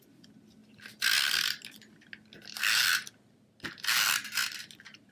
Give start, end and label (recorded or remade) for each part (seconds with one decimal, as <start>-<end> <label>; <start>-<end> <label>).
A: 0.0-5.1 recorded